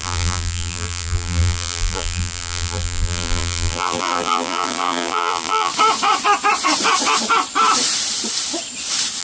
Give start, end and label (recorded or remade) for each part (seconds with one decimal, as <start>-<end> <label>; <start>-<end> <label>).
0.0-5.7 remade; 5.7-9.2 recorded